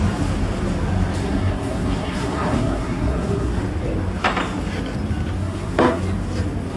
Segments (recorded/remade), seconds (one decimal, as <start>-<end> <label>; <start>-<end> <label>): 0.0-1.2 recorded; 1.2-3.5 remade; 3.5-5.4 recorded; 5.4-6.0 remade; 6.0-6.8 recorded